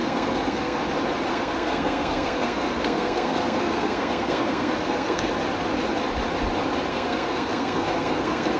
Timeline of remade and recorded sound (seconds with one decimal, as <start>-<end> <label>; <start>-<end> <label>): 0.0-0.8 remade; 0.8-1.3 recorded; 1.3-5.3 remade; 5.3-6.9 recorded; 6.9-8.6 remade